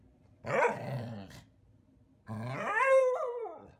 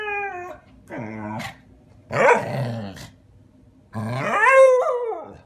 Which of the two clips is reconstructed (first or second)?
first